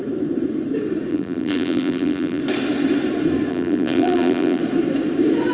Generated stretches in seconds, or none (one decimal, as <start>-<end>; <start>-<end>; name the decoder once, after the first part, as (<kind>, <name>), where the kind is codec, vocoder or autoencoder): 1.1-2.4 (vocoder, BigVGAN v2); 3.5-4.6